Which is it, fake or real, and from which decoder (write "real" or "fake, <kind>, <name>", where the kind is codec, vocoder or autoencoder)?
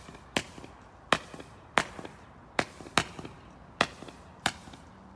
real